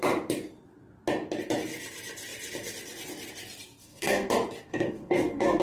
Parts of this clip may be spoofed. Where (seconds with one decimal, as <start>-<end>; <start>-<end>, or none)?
3.8-4.3; 4.7-5.6